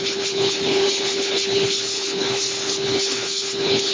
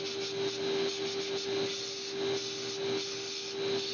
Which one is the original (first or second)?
second